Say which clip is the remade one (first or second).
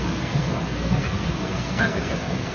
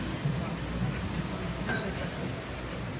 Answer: first